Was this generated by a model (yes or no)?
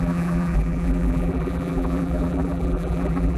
yes